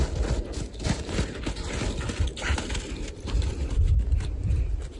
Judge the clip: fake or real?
real